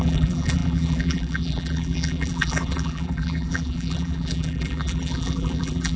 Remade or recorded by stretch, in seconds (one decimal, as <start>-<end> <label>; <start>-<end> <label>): 0.0-6.0 remade